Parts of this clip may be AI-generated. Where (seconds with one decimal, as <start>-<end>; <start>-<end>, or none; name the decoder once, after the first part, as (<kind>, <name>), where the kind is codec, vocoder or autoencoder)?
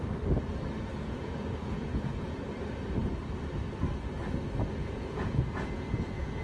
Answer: 0.9-2.4 (vocoder, Vocos); 4.8-6.4